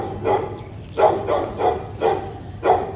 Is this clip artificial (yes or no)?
yes